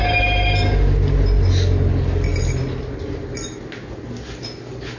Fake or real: real